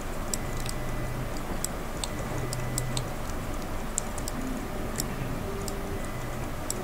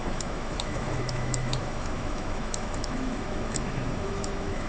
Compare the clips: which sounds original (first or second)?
first